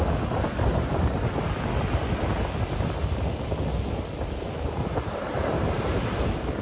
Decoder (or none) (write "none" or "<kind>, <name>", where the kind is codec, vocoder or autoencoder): none